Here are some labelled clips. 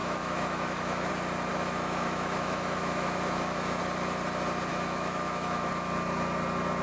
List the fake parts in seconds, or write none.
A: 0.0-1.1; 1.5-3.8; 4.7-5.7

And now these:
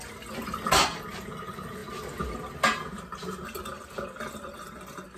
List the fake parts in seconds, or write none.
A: none

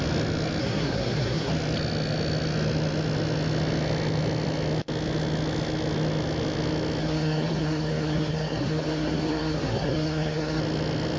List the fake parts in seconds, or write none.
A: 0.6-1.5; 7.0-10.6

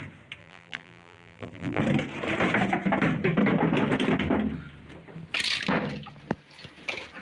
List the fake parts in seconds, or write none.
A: 0.4-1.8

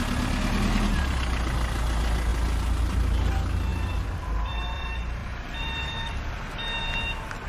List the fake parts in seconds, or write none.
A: 3.7-4.8; 5.2-6.4

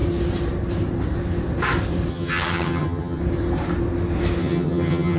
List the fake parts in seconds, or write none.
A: 2.1-3.2; 4.4-5.2

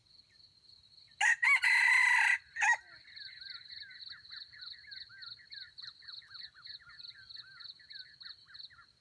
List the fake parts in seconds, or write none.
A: 2.0-3.4

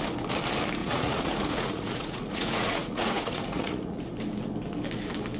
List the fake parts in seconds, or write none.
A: 0.8-4.0